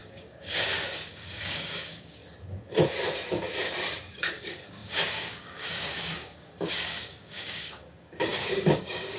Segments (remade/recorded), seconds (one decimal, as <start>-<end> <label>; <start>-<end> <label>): 0.0-2.2 remade; 2.2-4.0 recorded; 4.0-9.2 remade